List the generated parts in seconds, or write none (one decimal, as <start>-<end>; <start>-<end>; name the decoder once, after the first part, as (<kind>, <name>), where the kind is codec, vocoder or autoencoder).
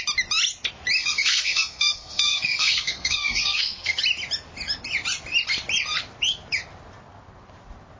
1.0-4.0 (codec, SNAC)